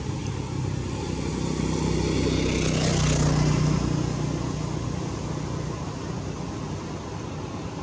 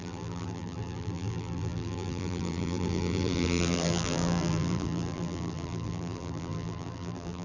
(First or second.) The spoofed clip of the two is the second